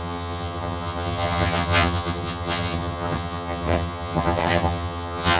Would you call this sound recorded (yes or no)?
no